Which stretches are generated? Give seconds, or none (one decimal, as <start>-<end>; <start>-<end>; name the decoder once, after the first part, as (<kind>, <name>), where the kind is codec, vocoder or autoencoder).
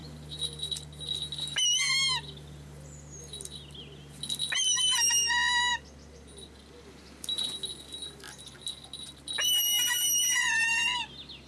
none